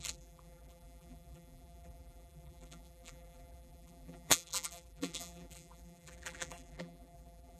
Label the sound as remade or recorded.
remade